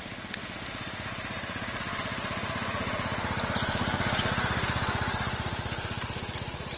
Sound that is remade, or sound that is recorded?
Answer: recorded